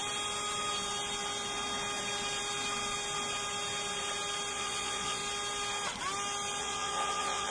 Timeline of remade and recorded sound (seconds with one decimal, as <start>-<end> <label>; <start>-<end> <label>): 0.0-4.5 recorded; 4.5-5.2 remade; 5.2-6.6 recorded; 6.6-7.5 remade